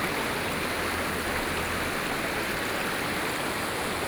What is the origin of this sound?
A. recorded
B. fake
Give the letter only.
A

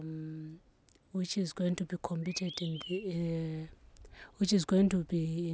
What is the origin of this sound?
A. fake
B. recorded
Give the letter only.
B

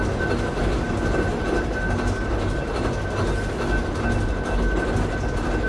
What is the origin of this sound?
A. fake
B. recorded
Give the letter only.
B